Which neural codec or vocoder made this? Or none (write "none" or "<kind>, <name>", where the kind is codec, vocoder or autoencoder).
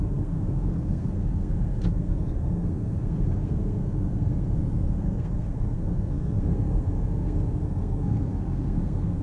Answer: codec, SNAC